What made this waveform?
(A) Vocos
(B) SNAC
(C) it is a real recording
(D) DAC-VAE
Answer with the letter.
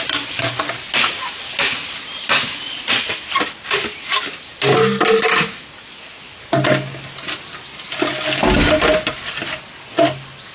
C